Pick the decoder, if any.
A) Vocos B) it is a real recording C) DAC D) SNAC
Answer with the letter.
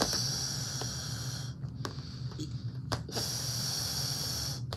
B